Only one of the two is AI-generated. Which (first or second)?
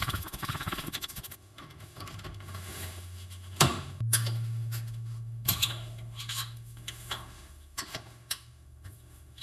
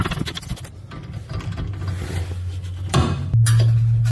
first